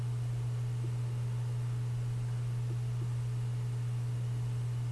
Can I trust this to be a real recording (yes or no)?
yes